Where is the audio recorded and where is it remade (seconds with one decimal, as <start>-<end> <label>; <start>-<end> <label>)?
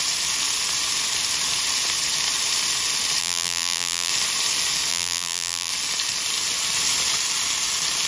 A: 0.0-3.2 recorded; 3.2-4.1 remade; 4.1-4.9 recorded; 4.9-5.7 remade; 5.7-8.1 recorded